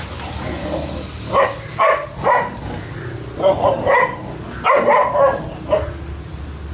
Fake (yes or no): no